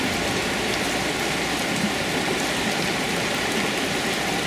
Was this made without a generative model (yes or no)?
yes